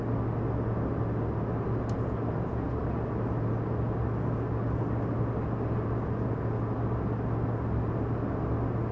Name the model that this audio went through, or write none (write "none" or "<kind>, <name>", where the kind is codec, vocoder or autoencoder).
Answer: none